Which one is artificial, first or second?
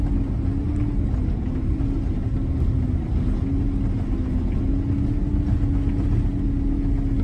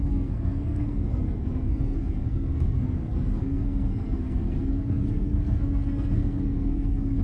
second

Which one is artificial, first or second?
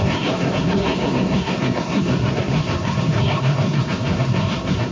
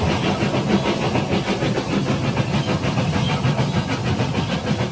first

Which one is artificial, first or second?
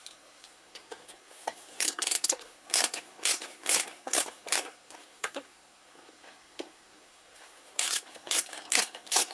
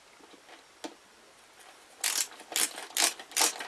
first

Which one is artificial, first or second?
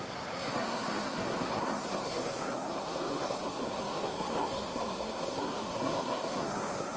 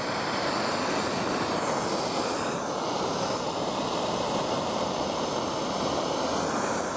first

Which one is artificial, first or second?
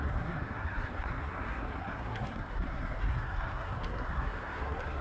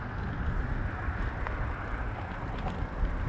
first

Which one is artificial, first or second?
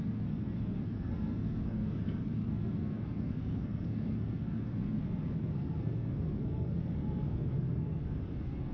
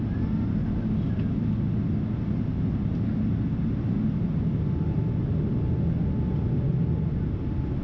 first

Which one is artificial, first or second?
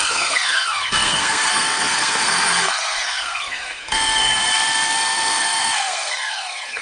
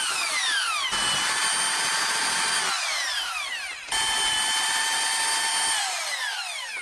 first